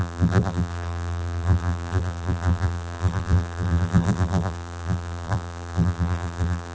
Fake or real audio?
fake